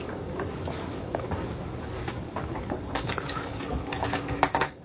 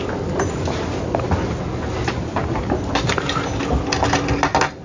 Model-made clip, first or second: first